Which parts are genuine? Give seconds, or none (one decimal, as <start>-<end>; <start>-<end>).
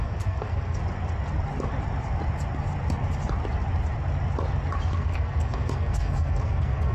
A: 0.8-4.9